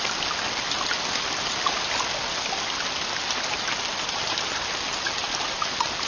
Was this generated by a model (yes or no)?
no